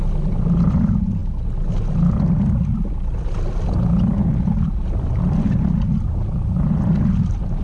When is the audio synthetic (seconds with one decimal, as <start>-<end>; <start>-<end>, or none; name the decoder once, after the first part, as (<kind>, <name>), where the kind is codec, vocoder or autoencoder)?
none